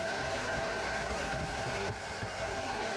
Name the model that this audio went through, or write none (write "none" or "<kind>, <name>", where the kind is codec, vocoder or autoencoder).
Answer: codec, SNAC